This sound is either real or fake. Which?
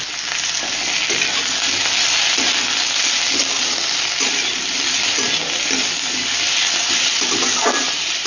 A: real